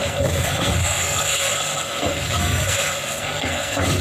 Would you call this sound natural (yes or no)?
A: no